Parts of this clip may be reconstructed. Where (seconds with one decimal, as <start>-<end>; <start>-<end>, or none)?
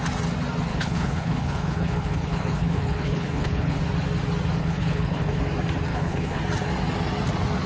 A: 0.7-3.8; 4.6-5.4; 5.9-6.4